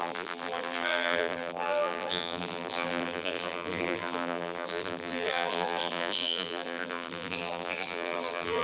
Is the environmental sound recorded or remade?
remade